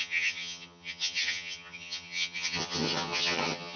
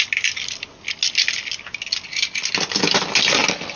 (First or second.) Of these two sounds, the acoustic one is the second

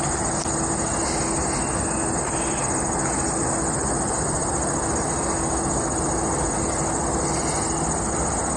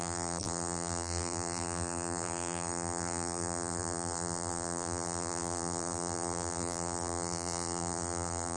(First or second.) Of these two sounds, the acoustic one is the first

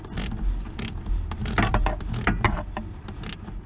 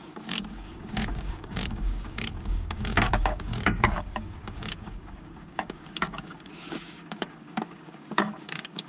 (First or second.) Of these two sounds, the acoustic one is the first